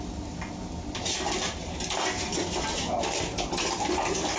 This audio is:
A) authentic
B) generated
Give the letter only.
A